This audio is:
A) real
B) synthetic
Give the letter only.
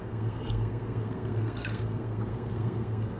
B